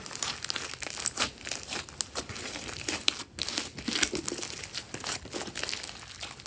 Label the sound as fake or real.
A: real